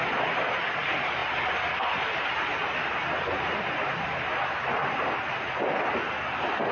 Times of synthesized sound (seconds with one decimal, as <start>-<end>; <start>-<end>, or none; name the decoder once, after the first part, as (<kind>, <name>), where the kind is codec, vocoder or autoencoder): none